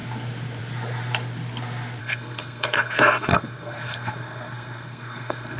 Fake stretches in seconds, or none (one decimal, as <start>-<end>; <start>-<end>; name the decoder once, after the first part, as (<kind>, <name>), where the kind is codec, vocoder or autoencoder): 2.0-5.6 (codec, SNAC)

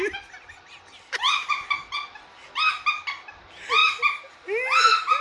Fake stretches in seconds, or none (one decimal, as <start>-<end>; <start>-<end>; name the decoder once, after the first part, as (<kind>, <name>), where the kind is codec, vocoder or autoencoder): none

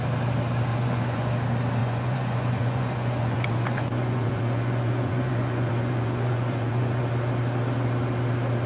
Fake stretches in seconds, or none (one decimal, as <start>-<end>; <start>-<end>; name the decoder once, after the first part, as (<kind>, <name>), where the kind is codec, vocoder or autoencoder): 0.7-1.3 (vocoder, Vocos); 1.8-7.0

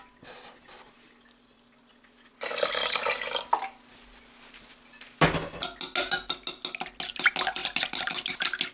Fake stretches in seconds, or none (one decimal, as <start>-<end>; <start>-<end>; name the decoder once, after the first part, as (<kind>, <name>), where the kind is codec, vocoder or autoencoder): none